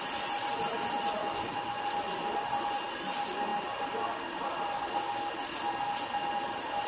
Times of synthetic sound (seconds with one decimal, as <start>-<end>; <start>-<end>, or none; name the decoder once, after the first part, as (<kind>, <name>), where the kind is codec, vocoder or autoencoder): none